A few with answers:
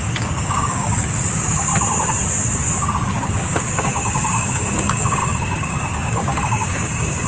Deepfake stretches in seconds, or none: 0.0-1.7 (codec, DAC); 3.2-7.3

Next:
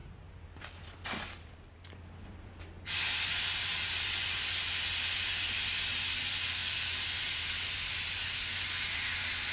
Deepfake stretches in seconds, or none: none